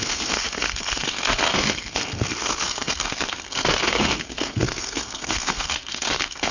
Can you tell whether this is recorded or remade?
remade